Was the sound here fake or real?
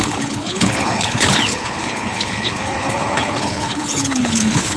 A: fake